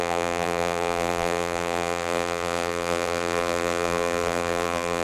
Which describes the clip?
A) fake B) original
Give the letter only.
A